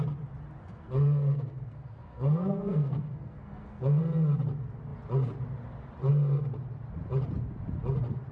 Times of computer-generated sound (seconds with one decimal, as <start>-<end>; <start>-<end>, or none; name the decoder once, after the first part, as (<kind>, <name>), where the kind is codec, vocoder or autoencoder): 0.6-4.0 (codec, SNAC)